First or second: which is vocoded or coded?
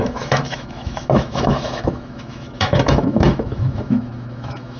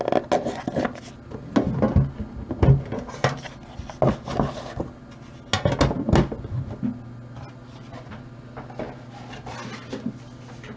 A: first